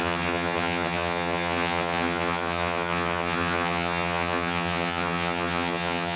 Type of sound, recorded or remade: remade